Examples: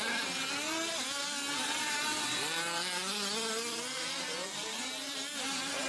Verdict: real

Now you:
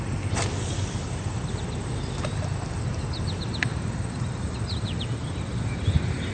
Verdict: real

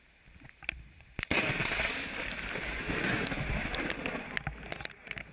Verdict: real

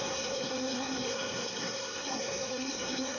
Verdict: fake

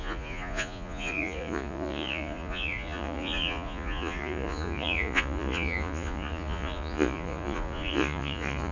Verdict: fake